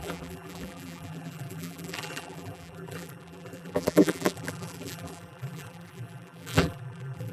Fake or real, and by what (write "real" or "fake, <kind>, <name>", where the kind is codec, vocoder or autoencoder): fake, vocoder, BigVGAN v2